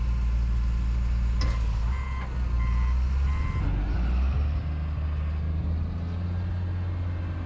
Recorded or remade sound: recorded